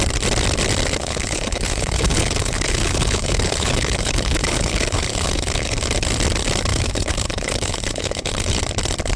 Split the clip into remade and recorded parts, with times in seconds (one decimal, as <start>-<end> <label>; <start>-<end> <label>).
0.0-1.0 recorded; 1.0-5.8 remade; 5.8-6.7 recorded; 6.7-8.6 remade; 8.6-9.2 recorded